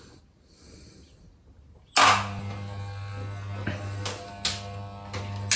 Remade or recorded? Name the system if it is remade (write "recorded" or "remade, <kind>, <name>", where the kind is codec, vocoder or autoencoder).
recorded